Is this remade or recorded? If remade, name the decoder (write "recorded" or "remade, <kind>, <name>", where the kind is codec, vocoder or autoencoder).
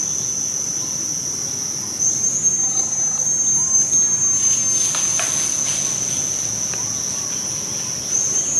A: recorded